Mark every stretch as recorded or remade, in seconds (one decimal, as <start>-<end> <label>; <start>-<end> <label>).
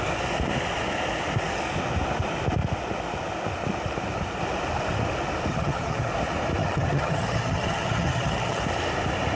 0.0-5.5 recorded; 5.5-6.1 remade; 6.1-6.6 recorded; 6.6-8.6 remade; 8.6-9.3 recorded